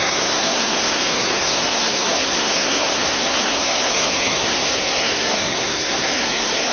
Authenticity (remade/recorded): remade